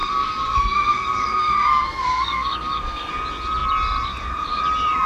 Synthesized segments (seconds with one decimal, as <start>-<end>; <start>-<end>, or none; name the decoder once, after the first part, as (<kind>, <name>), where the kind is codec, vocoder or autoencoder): 0.0-3.1 (codec, SNAC)